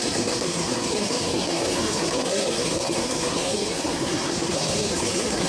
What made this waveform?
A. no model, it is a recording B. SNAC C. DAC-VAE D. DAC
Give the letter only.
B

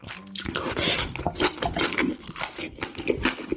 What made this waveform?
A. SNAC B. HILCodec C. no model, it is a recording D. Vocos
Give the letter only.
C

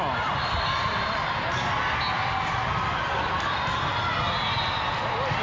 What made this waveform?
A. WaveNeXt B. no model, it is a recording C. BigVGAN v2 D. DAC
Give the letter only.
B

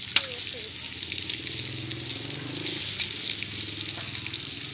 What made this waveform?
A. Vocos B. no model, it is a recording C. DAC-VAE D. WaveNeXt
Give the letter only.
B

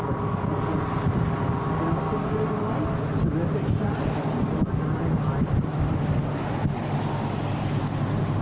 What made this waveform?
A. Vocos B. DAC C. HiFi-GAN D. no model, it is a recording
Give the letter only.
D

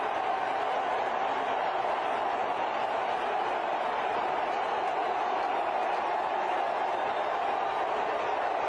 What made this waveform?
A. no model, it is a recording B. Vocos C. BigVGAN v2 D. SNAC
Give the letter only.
A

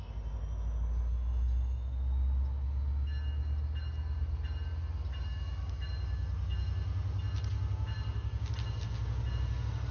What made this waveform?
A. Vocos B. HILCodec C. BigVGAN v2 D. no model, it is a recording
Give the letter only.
D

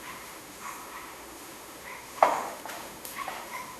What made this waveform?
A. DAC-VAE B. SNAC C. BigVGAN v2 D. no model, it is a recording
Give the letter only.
A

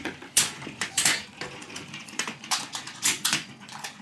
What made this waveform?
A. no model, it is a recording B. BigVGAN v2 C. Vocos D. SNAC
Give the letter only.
C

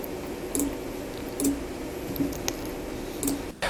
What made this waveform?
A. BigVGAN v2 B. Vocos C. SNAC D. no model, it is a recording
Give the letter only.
D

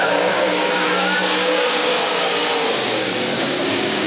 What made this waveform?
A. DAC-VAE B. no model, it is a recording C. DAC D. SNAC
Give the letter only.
C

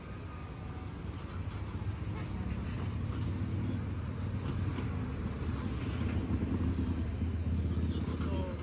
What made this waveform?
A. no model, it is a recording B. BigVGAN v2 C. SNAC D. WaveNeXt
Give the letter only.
A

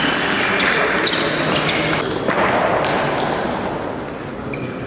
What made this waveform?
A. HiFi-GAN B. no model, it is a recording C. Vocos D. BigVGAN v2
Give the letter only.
B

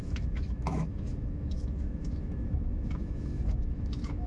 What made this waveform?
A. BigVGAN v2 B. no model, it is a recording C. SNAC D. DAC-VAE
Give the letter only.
D